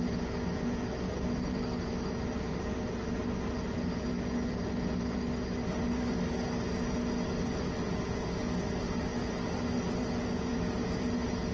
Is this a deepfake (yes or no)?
no